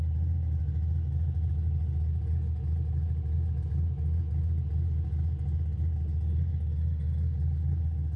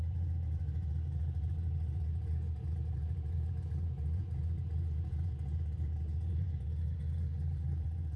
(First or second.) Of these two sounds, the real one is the first